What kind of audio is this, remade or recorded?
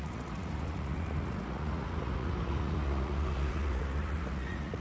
remade